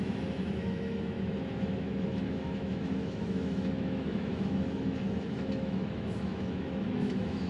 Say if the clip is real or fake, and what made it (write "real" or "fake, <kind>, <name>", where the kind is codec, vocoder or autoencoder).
fake, autoencoder, DAC-VAE